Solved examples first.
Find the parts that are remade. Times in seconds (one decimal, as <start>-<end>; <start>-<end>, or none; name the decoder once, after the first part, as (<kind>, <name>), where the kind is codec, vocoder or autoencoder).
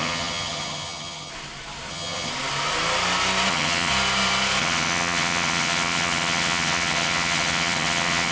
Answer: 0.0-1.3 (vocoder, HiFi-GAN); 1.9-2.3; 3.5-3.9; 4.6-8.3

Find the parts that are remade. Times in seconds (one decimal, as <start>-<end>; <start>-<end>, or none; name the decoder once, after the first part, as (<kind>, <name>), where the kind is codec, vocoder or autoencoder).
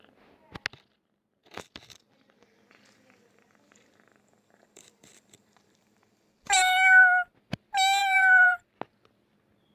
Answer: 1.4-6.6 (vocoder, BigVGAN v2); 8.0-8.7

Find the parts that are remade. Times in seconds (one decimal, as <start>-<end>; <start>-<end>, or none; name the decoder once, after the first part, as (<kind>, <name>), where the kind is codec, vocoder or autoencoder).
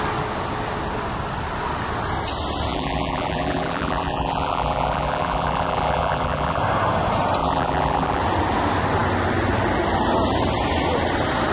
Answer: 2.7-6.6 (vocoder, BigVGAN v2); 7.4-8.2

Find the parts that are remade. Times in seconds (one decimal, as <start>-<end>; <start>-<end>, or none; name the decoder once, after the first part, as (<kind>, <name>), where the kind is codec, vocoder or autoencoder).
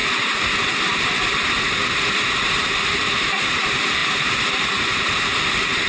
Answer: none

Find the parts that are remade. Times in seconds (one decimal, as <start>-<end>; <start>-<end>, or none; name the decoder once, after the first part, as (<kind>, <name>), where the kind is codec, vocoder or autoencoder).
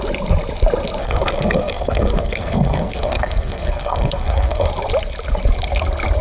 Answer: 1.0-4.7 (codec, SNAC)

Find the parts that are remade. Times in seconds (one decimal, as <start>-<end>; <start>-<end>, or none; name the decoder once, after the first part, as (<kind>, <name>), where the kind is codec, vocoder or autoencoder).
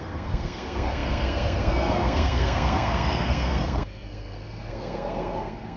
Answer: 0.0-5.8 (codec, SNAC)